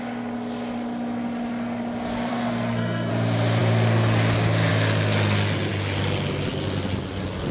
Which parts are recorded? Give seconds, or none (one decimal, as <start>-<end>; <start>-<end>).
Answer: 0.0-2.3; 3.1-7.5